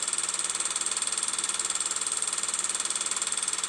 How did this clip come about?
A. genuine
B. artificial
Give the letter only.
A